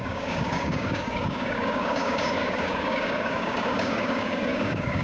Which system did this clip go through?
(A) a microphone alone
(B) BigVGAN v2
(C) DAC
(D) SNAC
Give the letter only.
C